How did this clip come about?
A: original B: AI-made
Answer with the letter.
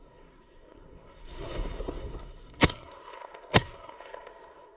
B